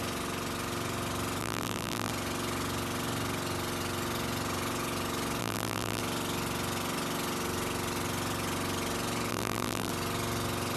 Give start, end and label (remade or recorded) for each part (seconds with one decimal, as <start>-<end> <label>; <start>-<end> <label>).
0.0-1.4 recorded; 1.4-2.1 remade; 2.1-5.4 recorded; 5.4-6.0 remade; 6.0-9.3 recorded; 9.3-9.9 remade; 9.9-10.8 recorded